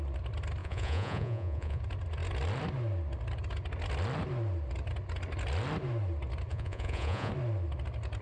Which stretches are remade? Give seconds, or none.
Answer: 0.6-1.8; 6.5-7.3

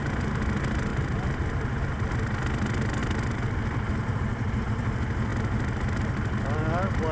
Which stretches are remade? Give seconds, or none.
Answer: none

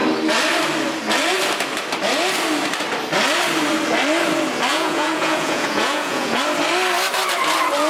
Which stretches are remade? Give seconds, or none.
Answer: 4.7-6.4

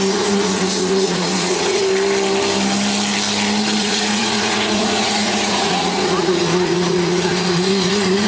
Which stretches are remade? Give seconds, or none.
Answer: 0.0-1.8; 3.8-8.3

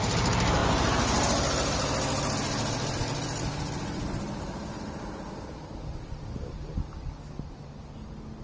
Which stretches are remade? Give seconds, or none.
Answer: none